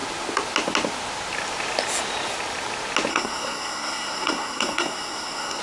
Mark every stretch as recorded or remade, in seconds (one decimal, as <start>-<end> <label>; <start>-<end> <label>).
0.0-3.1 recorded; 3.1-5.6 remade